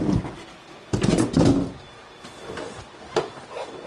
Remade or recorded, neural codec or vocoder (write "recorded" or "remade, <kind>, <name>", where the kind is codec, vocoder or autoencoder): recorded